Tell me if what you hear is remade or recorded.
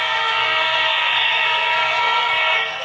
remade